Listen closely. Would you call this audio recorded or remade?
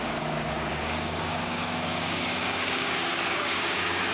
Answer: remade